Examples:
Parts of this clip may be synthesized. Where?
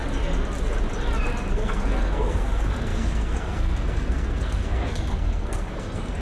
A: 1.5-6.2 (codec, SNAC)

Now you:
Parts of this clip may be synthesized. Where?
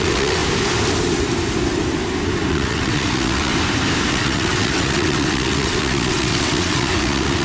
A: 0.0-0.4 (vocoder, WaveNeXt); 2.5-3.5; 4.1-7.4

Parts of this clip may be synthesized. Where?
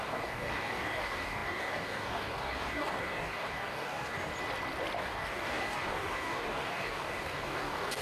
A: 0.0-4.3 (codec, DAC); 5.0-8.0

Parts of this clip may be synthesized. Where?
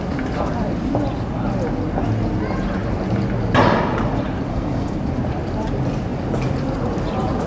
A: 4.5-5.0 (codec, SNAC)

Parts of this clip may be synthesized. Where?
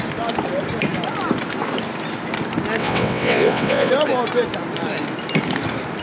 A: 2.8-3.9 (vocoder, WaveNeXt)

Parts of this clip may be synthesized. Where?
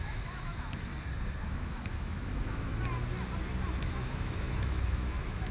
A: 0.0-0.9 (autoencoder, DAC-VAE); 1.4-2.7; 3.8-5.5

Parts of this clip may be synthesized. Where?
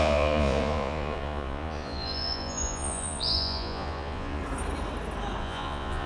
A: 0.0-4.4 (vocoder, Vocos); 5.4-6.1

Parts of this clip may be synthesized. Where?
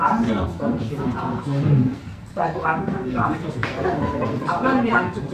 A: 0.0-5.3 (codec, SNAC)